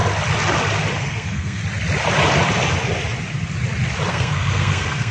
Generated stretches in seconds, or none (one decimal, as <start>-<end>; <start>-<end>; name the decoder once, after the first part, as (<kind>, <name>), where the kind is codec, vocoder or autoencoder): 1.0-1.6 (codec, SNAC); 4.1-5.1